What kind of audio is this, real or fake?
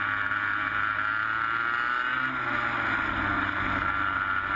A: real